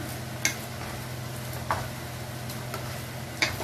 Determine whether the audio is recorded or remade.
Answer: recorded